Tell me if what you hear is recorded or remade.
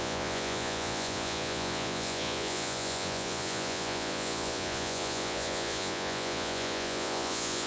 remade